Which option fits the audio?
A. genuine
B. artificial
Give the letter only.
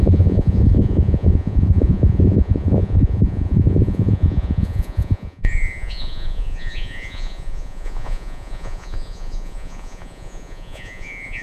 B